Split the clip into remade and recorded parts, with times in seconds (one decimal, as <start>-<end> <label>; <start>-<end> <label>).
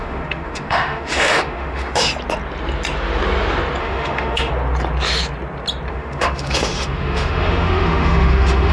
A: 0.0-2.1 remade; 2.1-3.8 recorded; 3.8-4.5 remade; 4.5-5.9 recorded; 5.9-8.7 remade